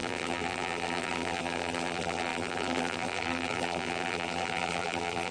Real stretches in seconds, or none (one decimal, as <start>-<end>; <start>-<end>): none